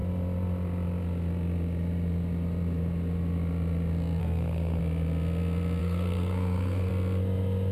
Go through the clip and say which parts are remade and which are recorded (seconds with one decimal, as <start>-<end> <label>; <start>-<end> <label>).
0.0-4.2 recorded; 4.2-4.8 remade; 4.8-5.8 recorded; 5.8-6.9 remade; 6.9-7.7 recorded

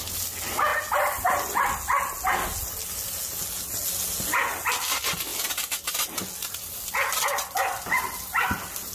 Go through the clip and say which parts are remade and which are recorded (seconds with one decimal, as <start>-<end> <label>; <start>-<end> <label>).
0.0-8.9 recorded

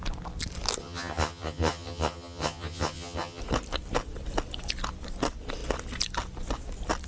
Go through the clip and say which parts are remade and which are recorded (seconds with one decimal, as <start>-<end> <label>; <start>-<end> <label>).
0.0-0.8 recorded; 0.8-3.4 remade; 3.4-7.1 recorded

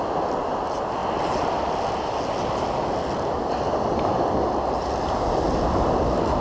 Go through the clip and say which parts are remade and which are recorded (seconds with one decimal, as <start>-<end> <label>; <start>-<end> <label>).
0.0-6.4 recorded

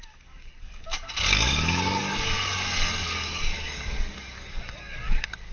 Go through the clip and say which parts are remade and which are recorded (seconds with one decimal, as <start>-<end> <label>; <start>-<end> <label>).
0.0-5.5 remade

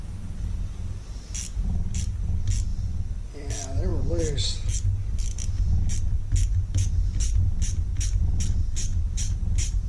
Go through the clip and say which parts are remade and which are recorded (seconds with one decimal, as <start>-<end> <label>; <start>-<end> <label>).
0.0-8.9 recorded; 8.9-9.9 remade

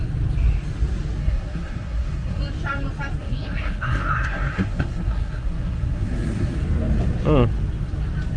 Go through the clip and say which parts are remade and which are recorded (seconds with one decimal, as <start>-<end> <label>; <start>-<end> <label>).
0.0-1.2 recorded; 1.2-2.4 remade; 2.4-3.2 recorded; 3.2-6.6 remade; 6.6-8.4 recorded